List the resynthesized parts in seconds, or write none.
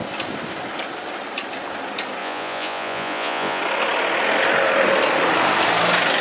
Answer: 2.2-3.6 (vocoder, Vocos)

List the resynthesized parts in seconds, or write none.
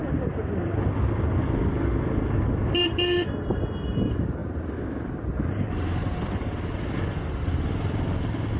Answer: none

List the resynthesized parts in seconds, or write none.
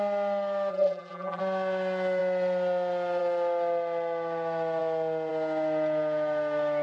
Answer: 0.7-1.4 (vocoder, BigVGAN v2)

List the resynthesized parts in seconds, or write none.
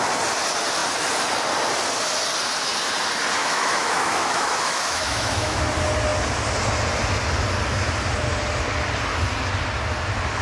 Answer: 3.4-5.6 (autoencoder, DAC-VAE)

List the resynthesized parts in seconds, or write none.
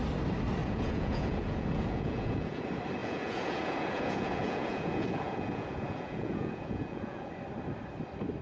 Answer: 0.6-2.6 (vocoder, Vocos); 3.0-7.3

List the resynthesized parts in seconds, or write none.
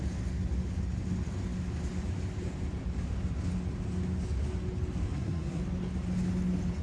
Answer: 5.1-5.6 (codec, SNAC)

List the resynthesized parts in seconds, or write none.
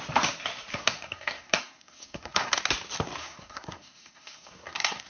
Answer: 0.7-2.6 (codec, SNAC); 3.2-5.1